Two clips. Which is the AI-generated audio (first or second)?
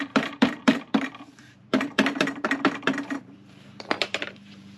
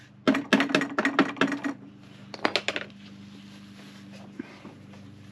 first